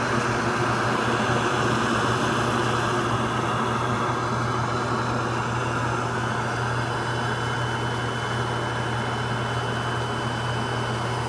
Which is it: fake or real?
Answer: real